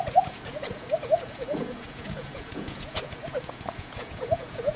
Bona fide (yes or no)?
no